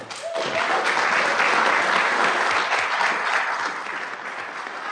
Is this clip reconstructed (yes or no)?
no